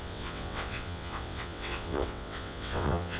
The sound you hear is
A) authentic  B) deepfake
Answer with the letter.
B